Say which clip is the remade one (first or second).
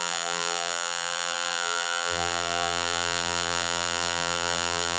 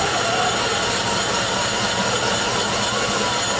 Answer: first